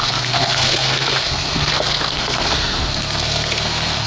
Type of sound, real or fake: fake